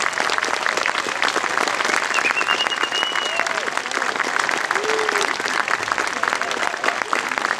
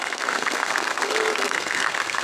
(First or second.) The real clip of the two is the first